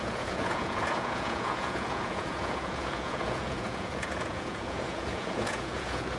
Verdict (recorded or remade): remade